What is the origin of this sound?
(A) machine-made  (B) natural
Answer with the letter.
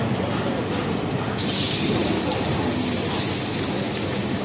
B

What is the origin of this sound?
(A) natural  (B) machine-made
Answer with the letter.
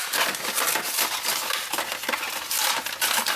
A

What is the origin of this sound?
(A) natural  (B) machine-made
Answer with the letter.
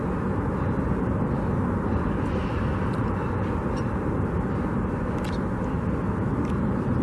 A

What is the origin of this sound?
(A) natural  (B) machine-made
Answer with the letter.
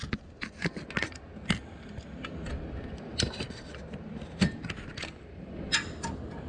A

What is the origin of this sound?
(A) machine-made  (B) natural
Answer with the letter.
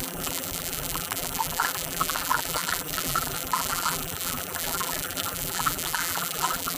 A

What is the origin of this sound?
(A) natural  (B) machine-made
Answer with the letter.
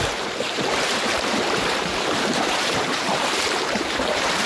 B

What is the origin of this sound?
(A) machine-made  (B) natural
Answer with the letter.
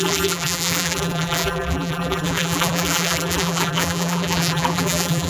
A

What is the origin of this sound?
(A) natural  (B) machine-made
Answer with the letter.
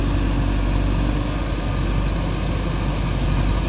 A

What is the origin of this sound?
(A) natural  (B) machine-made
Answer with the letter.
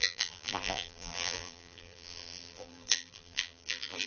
B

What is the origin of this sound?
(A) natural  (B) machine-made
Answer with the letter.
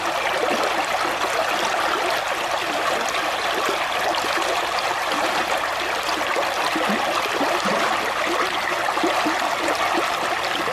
A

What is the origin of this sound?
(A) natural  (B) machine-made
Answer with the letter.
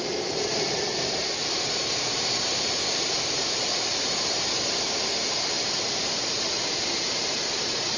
B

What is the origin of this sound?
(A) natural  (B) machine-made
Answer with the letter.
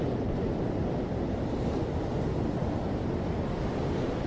A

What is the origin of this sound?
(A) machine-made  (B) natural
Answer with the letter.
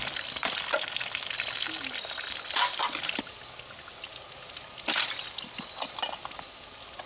B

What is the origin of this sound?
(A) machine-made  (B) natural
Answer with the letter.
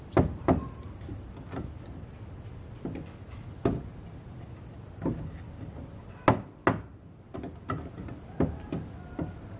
B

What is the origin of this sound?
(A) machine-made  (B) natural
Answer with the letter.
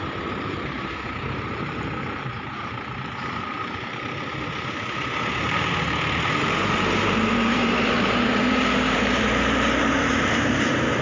A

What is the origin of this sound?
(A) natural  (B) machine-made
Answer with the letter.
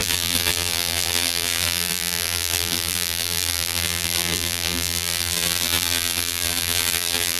B